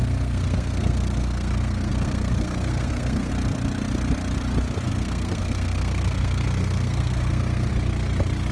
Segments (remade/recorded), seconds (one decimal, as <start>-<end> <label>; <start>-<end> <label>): 0.0-3.3 remade; 3.3-4.9 recorded; 4.9-7.7 remade; 7.7-8.5 recorded